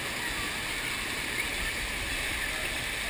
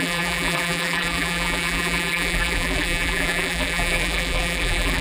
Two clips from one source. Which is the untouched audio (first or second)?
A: first